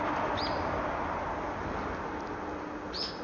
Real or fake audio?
real